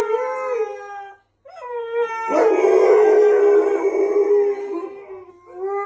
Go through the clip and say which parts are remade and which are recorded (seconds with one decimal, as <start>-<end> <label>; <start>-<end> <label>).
0.0-2.9 recorded; 2.9-3.4 remade; 3.4-4.6 recorded; 4.6-5.3 remade; 5.3-5.9 recorded